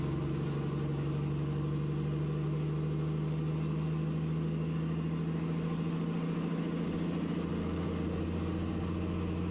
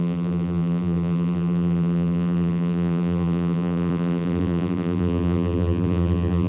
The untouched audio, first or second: first